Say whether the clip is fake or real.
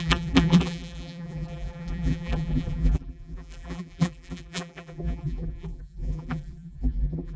fake